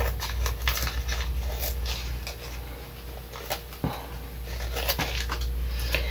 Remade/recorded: recorded